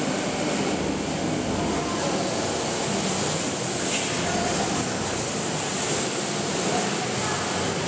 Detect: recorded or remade recorded